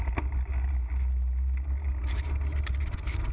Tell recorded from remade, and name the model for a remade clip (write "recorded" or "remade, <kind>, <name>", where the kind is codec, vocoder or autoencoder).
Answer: recorded